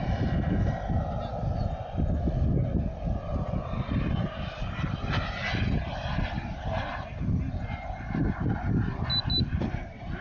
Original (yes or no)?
yes